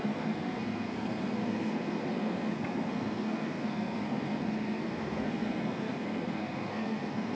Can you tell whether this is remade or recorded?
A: remade